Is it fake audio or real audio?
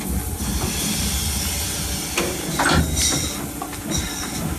real